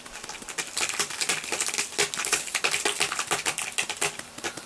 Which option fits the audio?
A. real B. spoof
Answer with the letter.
A